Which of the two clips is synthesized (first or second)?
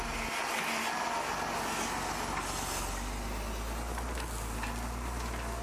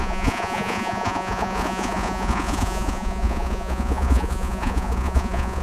second